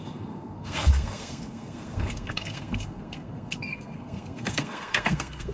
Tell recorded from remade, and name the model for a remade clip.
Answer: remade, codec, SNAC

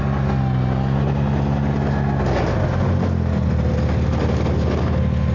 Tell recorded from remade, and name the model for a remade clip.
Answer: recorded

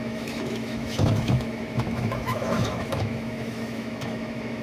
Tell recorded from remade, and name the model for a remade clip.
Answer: remade, autoencoder, DAC-VAE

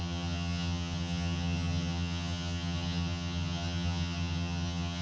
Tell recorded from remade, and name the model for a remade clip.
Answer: remade, vocoder, HiFi-GAN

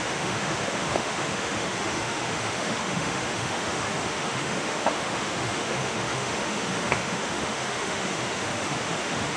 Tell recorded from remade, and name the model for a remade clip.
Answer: remade, autoencoder, DAC-VAE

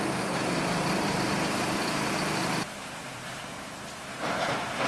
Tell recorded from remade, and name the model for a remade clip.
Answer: remade, vocoder, BigVGAN v2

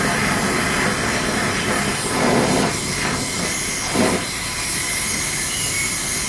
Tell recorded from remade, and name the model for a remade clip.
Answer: recorded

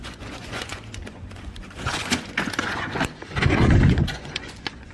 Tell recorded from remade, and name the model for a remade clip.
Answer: remade, vocoder, Vocos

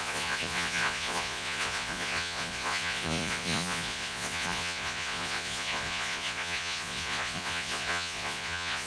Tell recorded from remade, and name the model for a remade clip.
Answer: remade, vocoder, Vocos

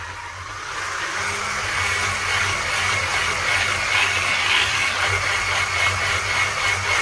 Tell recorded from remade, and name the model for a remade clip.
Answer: recorded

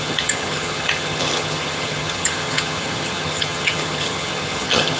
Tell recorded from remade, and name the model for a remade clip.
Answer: remade, vocoder, HiFi-GAN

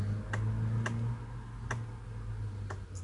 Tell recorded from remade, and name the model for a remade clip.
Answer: recorded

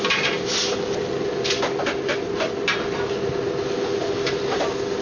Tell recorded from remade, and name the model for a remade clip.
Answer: recorded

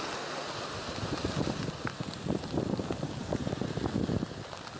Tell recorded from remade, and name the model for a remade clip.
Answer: recorded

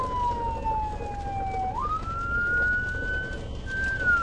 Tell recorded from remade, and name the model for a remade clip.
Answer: recorded